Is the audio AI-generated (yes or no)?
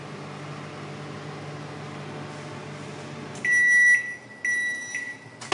no